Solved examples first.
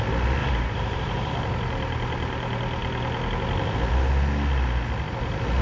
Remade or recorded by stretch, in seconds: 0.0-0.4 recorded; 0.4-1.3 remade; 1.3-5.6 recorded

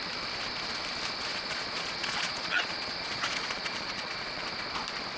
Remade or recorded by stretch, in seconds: 0.0-1.3 recorded; 1.3-4.4 remade; 4.4-5.2 recorded

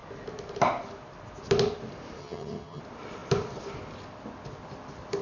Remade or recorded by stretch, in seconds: 0.0-2.2 recorded; 2.2-2.8 remade; 2.8-5.2 recorded